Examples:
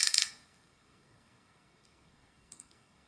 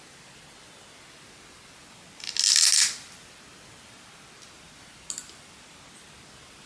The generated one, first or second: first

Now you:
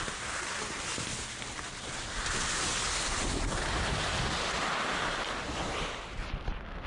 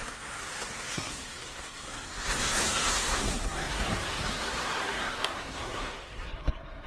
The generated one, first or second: second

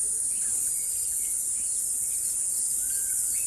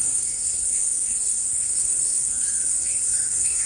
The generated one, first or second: second